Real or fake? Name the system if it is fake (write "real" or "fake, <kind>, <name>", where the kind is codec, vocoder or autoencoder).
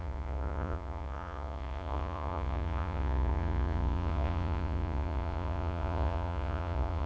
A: fake, vocoder, Vocos